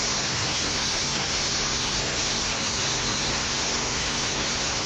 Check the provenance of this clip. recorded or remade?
remade